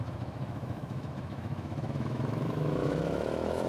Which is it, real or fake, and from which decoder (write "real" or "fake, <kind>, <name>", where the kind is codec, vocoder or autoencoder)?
fake, autoencoder, DAC-VAE